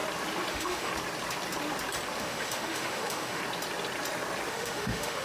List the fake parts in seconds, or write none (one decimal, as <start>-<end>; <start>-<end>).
0.5-0.9; 2.2-3.4; 4.5-5.2